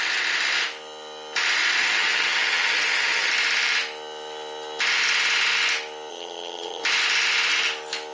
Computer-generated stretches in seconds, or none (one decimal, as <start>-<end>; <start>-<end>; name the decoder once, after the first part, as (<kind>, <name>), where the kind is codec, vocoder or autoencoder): 1.8-3.3 (vocoder, HiFi-GAN); 6.1-6.8